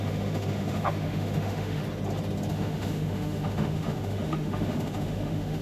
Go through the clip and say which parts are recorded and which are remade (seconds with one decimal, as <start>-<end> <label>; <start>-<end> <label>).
0.0-1.8 remade; 1.8-2.5 recorded; 2.5-5.6 remade